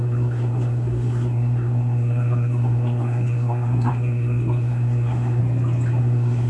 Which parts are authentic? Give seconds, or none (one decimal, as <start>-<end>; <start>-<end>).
5.4-6.0